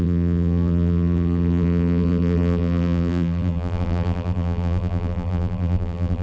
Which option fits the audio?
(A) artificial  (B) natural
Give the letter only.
A